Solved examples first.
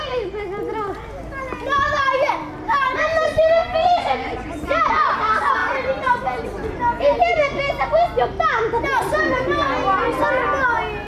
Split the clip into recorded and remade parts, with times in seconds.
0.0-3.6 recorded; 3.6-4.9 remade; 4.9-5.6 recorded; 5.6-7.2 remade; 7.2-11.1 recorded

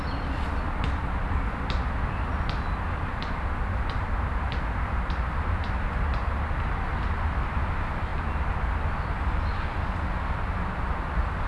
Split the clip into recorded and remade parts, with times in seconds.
0.0-11.5 recorded

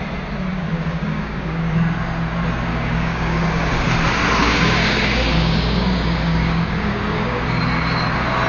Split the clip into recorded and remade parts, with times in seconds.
0.0-0.5 recorded; 0.5-1.6 remade; 1.6-2.7 recorded; 2.7-3.7 remade; 3.7-4.4 recorded; 4.4-7.6 remade; 7.6-8.5 recorded

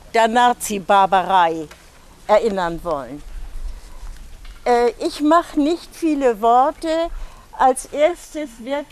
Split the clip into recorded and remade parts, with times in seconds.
0.0-8.1 recorded; 8.1-8.9 remade

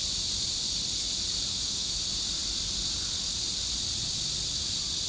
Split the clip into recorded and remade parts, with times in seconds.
0.0-1.5 recorded; 1.5-2.0 remade; 2.0-5.1 recorded